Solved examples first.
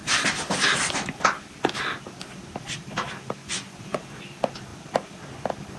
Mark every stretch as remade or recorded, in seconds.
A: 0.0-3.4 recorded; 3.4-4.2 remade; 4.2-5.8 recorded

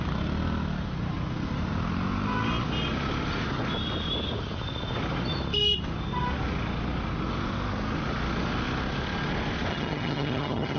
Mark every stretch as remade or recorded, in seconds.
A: 0.0-9.7 recorded; 9.7-10.8 remade

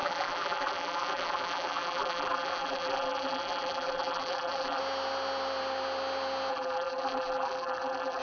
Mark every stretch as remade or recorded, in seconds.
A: 0.0-4.8 remade; 4.8-6.5 recorded; 6.5-8.2 remade

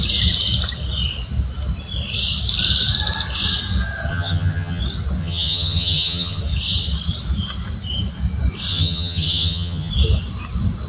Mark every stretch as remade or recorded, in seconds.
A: 0.0-4.1 recorded; 4.1-4.8 remade; 4.8-5.2 recorded; 5.2-6.4 remade; 6.4-8.7 recorded; 8.7-9.9 remade; 9.9-10.9 recorded

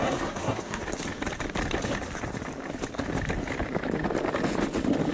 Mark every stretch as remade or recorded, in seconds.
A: 0.0-0.8 remade; 0.8-5.1 recorded